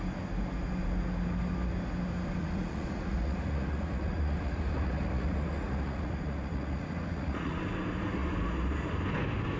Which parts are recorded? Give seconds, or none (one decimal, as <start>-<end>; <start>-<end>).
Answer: 0.0-2.4; 7.6-9.6